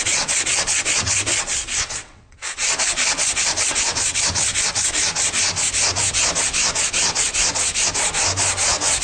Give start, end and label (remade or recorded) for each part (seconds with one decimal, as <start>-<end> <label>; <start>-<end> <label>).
0.0-5.0 remade; 5.0-9.0 recorded